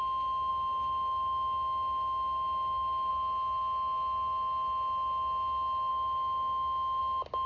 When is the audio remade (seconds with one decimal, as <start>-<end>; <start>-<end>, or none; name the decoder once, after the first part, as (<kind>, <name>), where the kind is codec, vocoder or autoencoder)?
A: 0.5-3.1 (autoencoder, DAC-VAE); 5.9-7.0